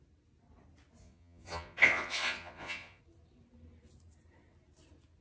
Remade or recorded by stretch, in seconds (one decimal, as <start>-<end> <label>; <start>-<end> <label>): 0.0-1.0 recorded; 1.0-3.0 remade; 3.0-5.2 recorded